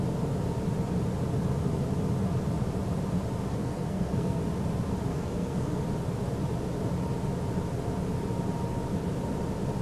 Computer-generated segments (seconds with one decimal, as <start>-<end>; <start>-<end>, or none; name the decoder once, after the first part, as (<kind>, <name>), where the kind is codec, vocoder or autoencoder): 3.5-4.4 (codec, SNAC); 5.1-5.8